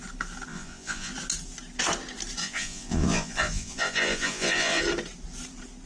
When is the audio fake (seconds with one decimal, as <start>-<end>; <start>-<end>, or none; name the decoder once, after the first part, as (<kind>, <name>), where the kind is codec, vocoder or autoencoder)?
0.5-1.1 (vocoder, Vocos); 2.4-4.8